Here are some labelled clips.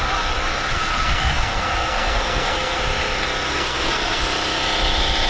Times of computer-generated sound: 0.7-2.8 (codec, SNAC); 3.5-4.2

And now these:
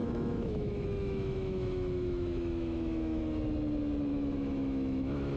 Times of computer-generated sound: 0.0-3.2 (autoencoder, DAC-VAE); 4.1-5.4

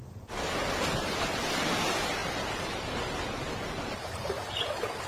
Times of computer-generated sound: 2.2-4.4 (vocoder, BigVGAN v2)

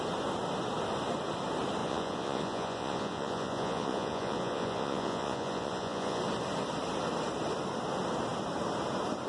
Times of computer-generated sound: 1.8-6.2 (vocoder, Vocos)